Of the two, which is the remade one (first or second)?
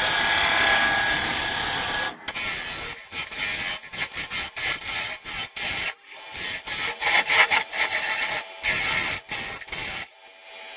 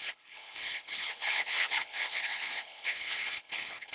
second